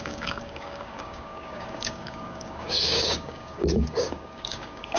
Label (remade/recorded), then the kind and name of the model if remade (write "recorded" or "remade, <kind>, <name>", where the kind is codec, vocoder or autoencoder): remade, codec, DAC